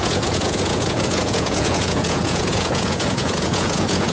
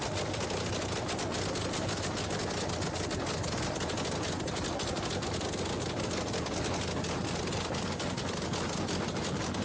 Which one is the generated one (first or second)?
first